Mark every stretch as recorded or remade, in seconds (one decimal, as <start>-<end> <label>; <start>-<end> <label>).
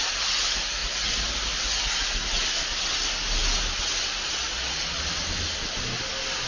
0.0-6.5 recorded